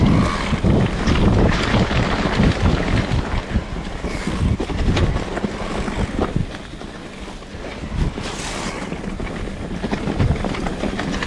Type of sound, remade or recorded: recorded